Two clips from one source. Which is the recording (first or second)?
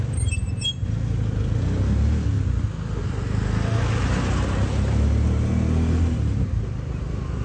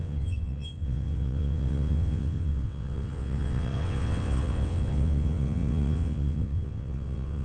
first